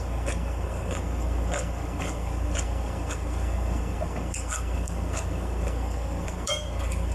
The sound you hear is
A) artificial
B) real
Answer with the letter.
A